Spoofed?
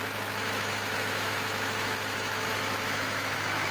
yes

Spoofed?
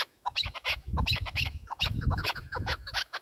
yes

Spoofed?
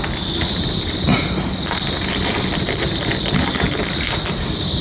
no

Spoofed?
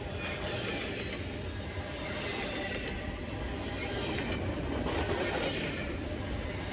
no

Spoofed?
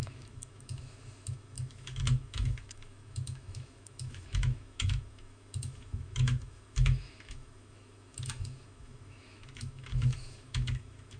yes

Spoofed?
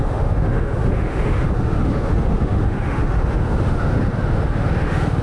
yes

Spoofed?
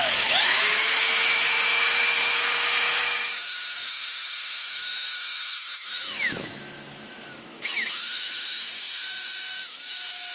yes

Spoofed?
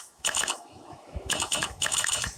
yes